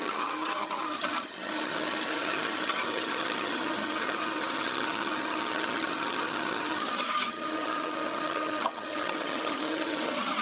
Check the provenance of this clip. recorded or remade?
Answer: remade